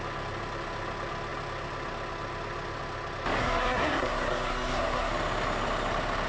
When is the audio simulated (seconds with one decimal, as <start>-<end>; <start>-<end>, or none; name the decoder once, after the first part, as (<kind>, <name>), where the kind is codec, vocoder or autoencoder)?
3.4-5.1 (codec, SNAC)